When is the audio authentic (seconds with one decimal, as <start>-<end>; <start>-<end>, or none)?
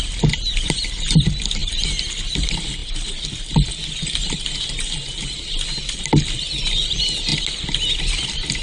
0.0-8.6